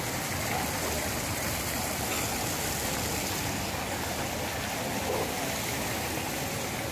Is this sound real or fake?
real